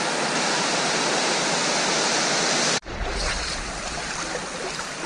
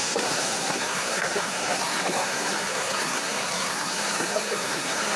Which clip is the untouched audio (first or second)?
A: first